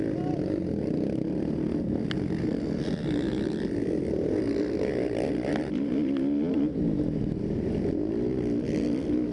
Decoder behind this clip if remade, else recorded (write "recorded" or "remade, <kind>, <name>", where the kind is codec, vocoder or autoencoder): recorded